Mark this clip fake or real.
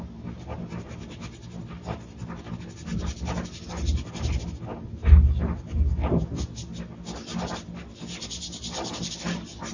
real